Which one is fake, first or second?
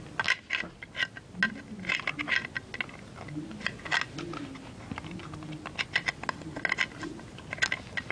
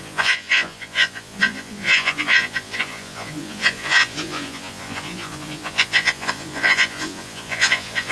second